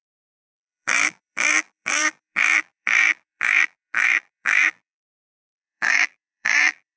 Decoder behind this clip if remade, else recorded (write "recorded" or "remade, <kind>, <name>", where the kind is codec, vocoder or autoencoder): remade, vocoder, BigVGAN v2